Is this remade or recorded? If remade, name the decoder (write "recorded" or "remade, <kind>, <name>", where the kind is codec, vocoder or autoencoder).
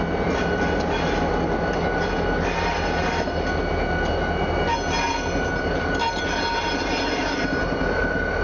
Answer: recorded